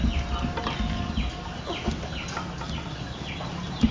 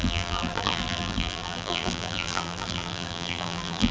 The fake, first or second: second